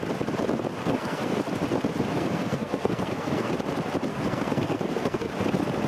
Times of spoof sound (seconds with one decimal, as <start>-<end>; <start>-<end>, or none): 0.8-1.4; 2.1-3.5; 4.1-5.3